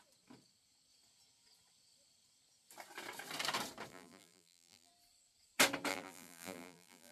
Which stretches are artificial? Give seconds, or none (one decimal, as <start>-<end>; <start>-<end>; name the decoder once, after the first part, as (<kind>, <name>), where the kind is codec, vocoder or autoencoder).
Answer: 3.9-4.9 (vocoder, BigVGAN v2); 5.9-7.1